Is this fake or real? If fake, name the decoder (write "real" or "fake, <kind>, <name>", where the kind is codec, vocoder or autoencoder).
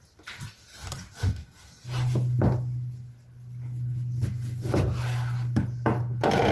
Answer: real